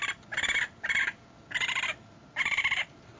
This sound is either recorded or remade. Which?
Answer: remade